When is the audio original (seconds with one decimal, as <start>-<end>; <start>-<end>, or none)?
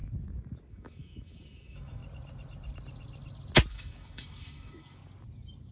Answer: 0.0-0.7; 2.0-3.7; 5.0-5.7